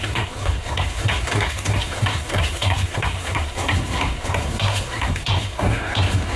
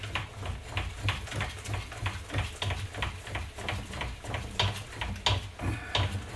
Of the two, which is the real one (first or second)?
second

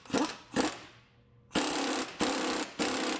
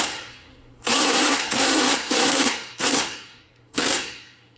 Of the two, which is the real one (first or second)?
first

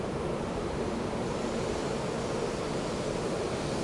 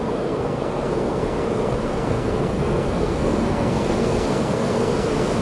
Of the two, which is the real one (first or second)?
first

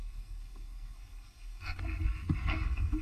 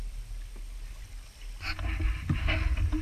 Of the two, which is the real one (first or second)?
second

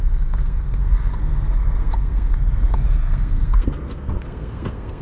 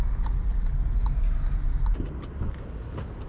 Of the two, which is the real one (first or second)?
second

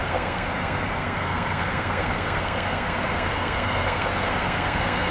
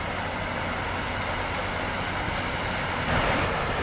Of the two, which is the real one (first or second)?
second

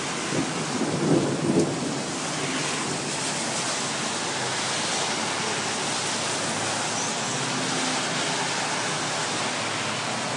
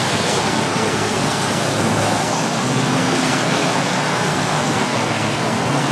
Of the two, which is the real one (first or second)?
first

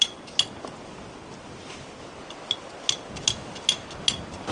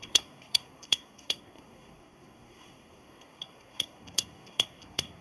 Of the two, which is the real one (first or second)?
first